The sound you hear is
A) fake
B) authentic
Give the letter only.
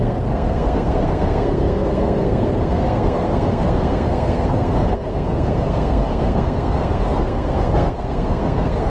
A